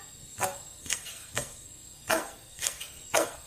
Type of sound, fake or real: fake